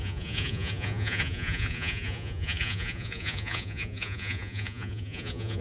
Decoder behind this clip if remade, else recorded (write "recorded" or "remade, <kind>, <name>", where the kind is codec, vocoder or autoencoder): remade, vocoder, Vocos